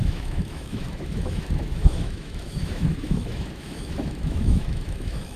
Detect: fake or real fake